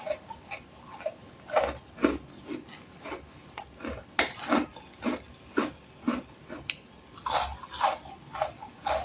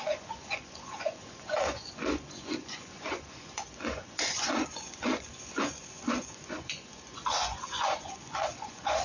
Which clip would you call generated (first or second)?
second